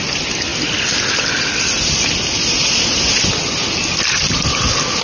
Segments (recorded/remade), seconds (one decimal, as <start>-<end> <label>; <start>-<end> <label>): 0.0-5.0 recorded

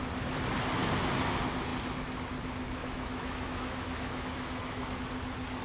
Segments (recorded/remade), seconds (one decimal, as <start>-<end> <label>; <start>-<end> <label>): 0.0-2.8 recorded; 2.8-5.0 remade; 5.0-5.6 recorded

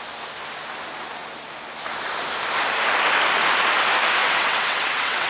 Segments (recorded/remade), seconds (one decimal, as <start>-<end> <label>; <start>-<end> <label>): 0.0-4.2 recorded; 4.2-5.3 remade

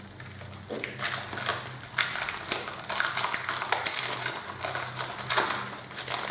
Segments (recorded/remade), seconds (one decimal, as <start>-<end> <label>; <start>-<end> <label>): 0.0-6.3 recorded

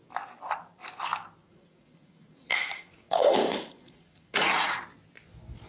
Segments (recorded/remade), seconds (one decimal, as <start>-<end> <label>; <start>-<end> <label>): 0.0-1.4 recorded; 1.4-4.8 remade; 4.8-5.7 recorded

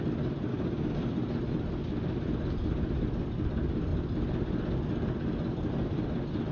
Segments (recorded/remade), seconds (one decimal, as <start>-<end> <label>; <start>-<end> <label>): 0.0-0.5 recorded; 0.5-1.1 remade; 1.1-6.5 recorded

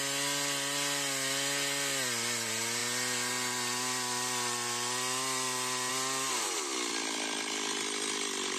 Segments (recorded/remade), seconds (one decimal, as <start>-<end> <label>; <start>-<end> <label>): 0.0-8.6 recorded